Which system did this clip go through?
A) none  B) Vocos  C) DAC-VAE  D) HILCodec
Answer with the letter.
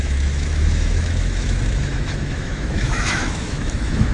C